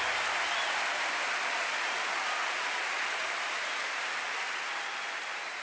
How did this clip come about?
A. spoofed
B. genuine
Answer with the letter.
B